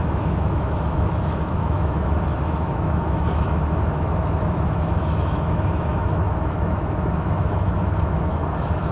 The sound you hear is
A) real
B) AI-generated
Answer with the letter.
B